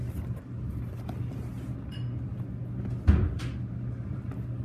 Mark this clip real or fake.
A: real